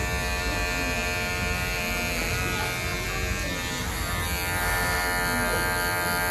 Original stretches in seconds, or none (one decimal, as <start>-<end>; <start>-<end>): 0.0-6.3